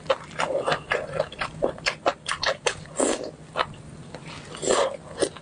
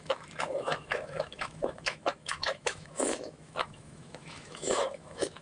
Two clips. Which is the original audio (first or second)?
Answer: first